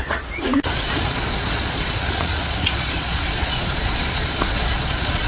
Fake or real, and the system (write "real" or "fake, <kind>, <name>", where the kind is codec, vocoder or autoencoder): fake, vocoder, Vocos